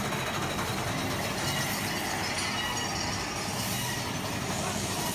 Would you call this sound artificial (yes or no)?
no